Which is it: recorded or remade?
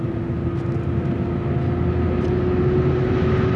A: recorded